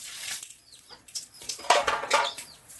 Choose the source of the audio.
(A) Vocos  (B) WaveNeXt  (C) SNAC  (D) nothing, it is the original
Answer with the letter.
A